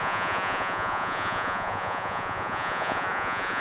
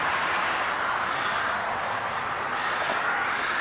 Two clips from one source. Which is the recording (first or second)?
second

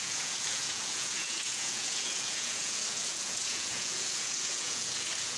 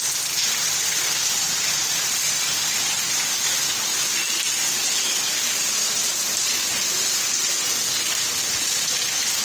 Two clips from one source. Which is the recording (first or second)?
second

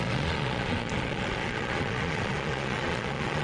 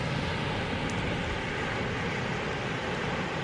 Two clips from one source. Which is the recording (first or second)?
second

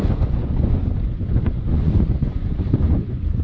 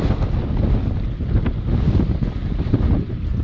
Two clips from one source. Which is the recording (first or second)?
second